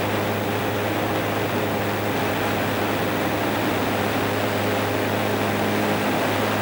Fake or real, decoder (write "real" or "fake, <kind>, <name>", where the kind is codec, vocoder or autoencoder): real